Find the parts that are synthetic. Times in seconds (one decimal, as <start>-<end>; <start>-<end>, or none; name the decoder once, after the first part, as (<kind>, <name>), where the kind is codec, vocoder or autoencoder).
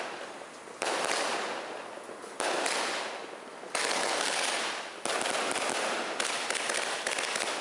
3.5-4.6 (codec, DAC)